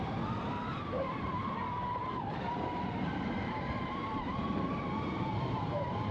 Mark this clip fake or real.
fake